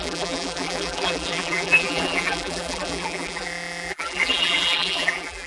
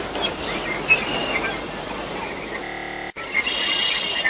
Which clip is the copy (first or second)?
first